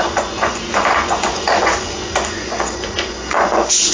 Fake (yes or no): yes